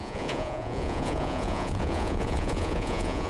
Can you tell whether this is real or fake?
fake